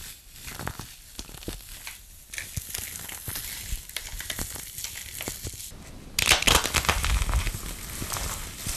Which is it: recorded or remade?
recorded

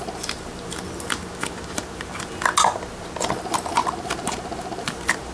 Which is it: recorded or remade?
recorded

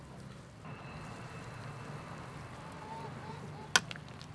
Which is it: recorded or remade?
recorded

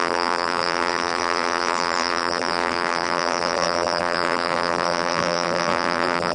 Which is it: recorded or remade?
remade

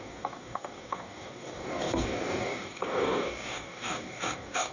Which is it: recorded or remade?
remade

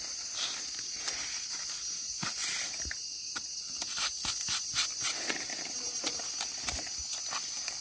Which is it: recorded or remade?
recorded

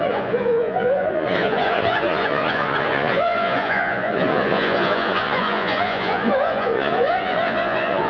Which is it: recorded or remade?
remade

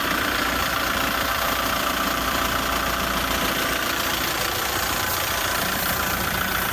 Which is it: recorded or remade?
remade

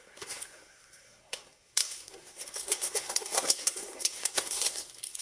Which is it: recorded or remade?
remade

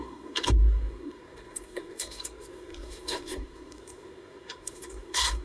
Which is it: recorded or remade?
remade